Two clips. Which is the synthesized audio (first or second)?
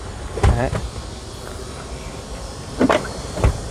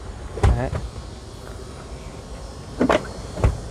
first